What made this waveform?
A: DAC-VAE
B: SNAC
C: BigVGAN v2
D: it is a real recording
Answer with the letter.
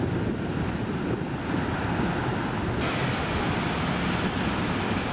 D